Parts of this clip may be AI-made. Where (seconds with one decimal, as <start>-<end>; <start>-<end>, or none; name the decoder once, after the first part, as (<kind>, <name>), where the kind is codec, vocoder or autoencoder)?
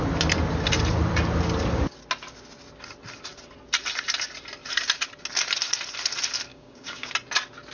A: 6.5-7.1 (codec, DAC)